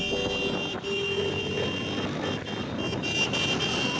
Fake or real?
real